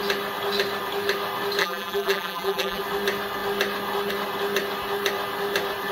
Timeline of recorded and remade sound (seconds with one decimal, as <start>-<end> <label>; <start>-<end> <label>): 0.0-1.6 recorded; 1.6-2.8 remade; 2.8-5.9 recorded